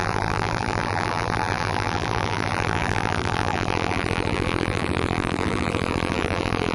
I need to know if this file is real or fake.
fake